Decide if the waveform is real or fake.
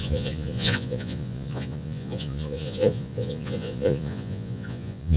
fake